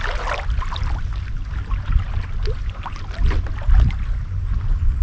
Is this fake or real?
real